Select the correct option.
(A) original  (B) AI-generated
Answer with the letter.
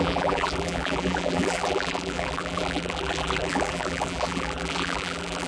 B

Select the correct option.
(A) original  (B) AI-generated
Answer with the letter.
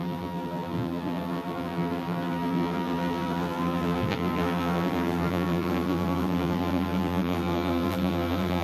B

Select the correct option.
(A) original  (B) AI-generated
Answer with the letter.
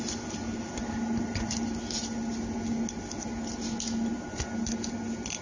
A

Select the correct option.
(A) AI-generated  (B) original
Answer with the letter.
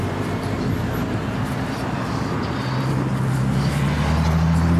B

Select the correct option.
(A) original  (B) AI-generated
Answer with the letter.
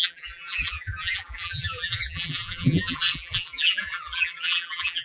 B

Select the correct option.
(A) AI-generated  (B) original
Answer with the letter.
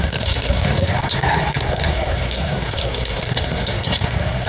A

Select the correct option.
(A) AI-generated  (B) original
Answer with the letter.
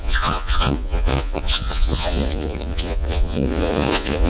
A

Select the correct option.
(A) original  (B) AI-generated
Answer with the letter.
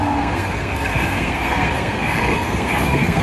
B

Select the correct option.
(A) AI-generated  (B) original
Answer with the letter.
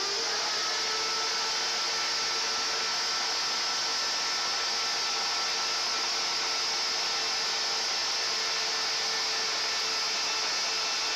B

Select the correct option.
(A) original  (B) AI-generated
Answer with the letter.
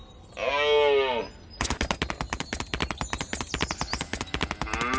A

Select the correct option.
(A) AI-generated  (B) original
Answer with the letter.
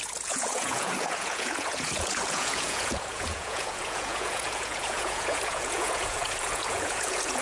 A